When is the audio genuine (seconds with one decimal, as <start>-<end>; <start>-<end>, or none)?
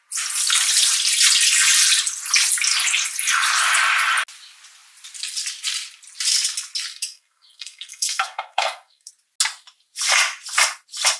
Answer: 0.0-6.9; 9.1-11.2